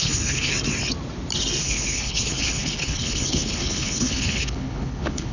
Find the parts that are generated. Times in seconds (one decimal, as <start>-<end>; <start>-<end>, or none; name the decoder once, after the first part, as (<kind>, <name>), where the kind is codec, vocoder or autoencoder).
0.0-0.5 (codec, HILCodec); 1.6-5.3